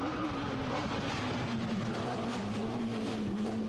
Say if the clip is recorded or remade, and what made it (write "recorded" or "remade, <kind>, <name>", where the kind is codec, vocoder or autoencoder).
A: recorded